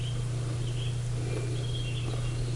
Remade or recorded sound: recorded